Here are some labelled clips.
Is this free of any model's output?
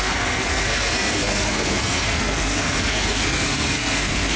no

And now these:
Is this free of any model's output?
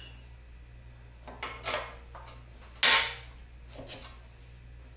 yes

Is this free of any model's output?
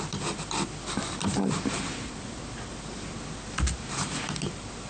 no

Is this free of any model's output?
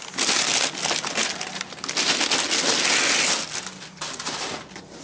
yes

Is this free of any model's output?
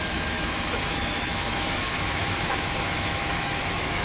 no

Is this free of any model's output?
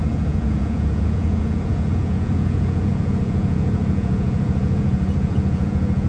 no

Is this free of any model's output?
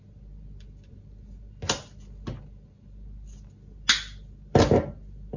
yes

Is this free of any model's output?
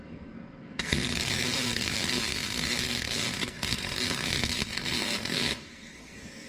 no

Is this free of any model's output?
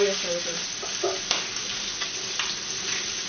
yes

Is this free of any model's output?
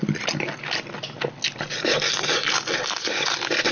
yes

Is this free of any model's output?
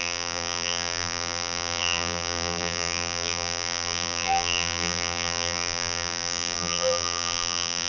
no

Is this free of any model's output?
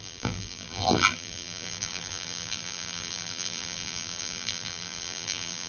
no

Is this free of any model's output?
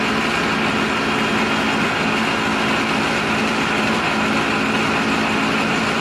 yes